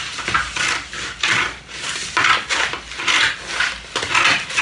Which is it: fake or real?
real